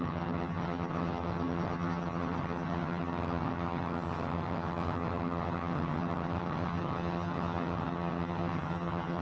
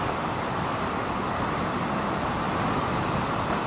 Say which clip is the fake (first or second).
first